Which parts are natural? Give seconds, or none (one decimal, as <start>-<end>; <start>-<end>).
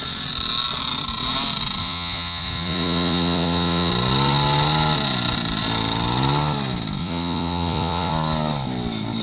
0.0-1.8; 3.9-7.0; 8.1-9.2